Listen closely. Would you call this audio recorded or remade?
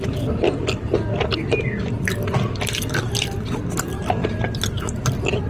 recorded